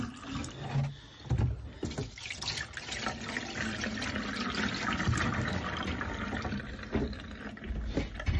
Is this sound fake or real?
real